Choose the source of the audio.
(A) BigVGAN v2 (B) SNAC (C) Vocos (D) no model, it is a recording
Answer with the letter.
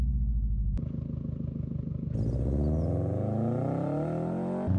D